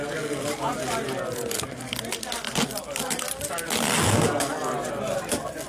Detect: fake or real real